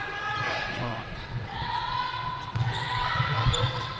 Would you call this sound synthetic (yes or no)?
yes